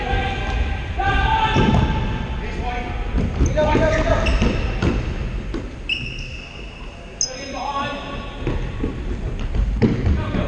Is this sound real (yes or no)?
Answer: yes